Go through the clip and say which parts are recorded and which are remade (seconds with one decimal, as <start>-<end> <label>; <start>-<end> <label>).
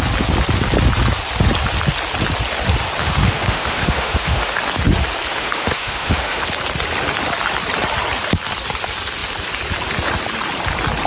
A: 0.0-3.0 recorded; 3.0-4.6 remade; 4.6-5.3 recorded; 5.3-6.4 remade; 6.4-11.1 recorded